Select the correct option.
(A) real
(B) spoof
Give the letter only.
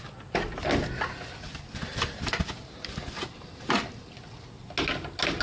A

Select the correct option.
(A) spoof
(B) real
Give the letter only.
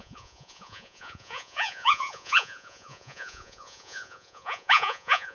A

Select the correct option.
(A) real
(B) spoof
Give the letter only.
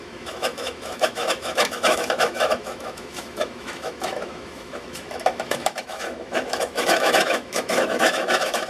B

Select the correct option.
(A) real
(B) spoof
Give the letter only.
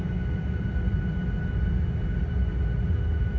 A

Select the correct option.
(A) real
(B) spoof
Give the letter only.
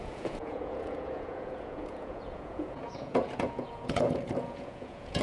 B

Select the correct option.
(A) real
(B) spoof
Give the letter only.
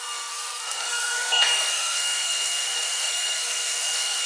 B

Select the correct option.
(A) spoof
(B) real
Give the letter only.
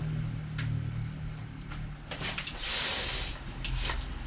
B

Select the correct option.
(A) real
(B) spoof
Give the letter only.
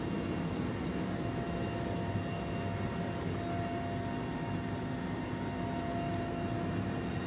A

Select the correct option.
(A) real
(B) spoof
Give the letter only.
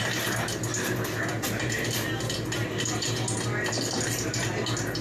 A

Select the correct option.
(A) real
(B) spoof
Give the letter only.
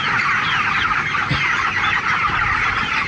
A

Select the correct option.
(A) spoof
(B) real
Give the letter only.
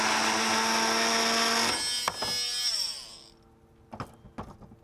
B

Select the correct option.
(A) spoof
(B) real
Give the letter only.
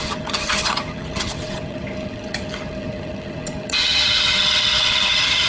A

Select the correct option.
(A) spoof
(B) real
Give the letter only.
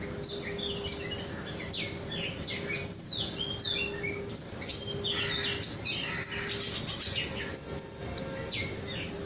B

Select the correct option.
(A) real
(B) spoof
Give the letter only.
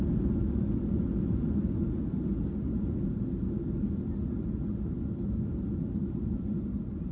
A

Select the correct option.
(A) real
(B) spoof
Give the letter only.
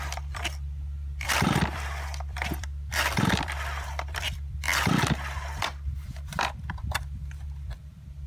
B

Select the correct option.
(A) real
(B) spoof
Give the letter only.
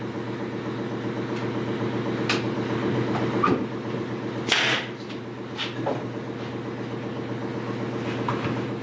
A